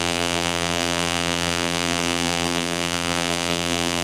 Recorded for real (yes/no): no